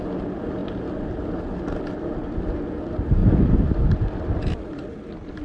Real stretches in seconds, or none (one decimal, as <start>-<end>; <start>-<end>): 0.0-5.4

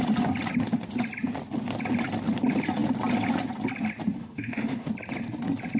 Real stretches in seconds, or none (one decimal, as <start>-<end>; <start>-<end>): 0.0-4.2; 4.9-5.8

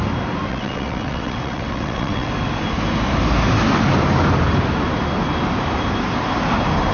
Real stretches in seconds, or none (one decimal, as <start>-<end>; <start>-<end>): 0.0-0.5; 2.3-6.9

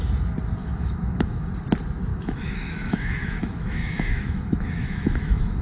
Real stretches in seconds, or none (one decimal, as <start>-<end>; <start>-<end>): 0.0-0.6; 1.5-2.1

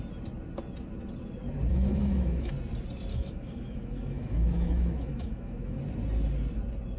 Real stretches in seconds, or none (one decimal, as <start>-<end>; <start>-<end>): 0.0-1.7; 2.5-3.1; 5.8-7.0